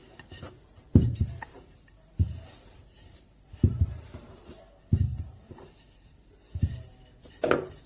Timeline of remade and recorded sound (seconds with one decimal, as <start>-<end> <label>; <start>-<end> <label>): 0.0-4.1 remade; 4.1-5.1 recorded; 5.1-6.5 remade; 6.5-7.9 recorded